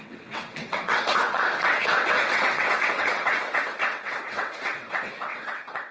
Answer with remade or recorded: remade